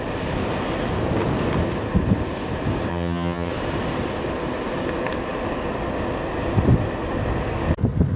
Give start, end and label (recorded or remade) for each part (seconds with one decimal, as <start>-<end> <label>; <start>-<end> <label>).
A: 0.0-2.9 recorded; 2.9-3.5 remade; 3.5-8.2 recorded